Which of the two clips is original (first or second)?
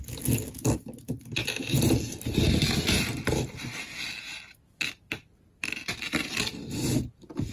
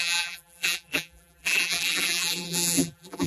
first